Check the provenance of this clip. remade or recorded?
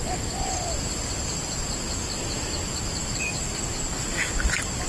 recorded